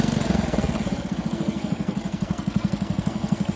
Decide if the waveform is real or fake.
fake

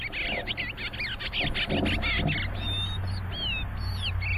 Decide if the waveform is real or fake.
real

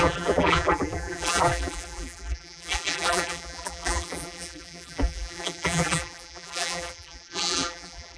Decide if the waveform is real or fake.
fake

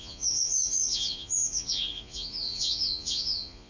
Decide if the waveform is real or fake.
fake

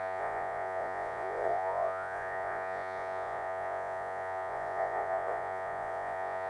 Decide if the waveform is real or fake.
fake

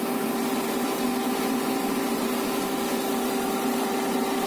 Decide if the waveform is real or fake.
real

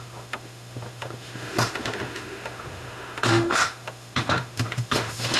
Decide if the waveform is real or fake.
fake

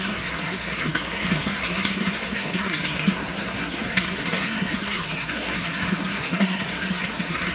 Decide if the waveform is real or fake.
fake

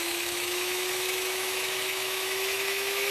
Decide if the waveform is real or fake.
fake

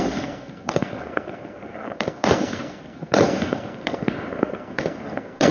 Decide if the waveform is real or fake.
fake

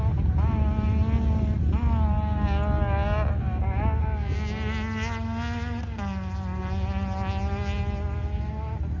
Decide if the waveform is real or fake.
real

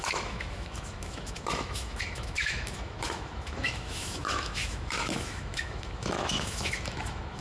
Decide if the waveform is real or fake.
fake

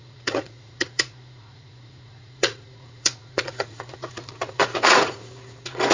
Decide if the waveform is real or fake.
fake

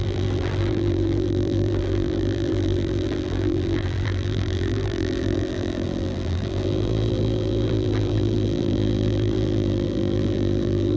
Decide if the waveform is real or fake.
fake